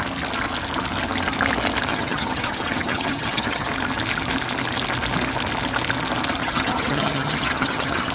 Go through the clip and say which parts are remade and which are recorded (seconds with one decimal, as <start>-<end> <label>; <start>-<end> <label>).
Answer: 0.0-1.9 recorded; 1.9-3.7 remade; 3.7-6.4 recorded; 6.4-8.1 remade